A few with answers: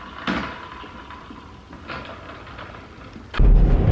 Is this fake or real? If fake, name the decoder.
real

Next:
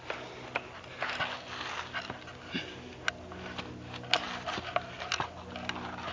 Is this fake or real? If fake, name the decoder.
real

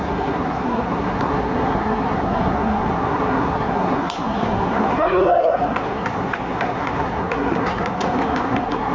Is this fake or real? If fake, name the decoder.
fake, codec, SNAC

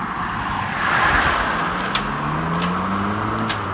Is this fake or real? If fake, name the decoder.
real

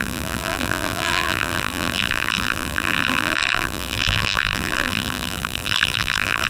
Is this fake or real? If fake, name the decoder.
fake, vocoder, BigVGAN v2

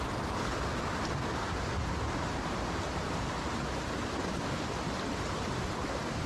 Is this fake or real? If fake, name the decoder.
real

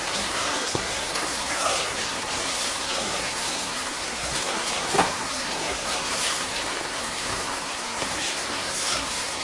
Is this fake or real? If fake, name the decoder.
fake, codec, SNAC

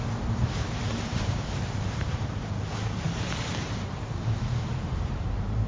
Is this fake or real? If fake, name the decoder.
fake, vocoder, BigVGAN v2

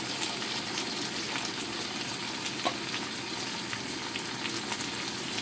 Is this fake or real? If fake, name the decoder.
real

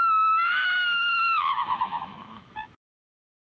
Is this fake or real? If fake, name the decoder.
fake, autoencoder, DAC-VAE